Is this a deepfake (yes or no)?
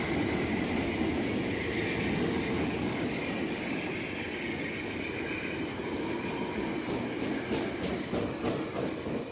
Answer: no